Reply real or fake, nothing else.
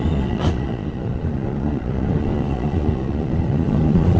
fake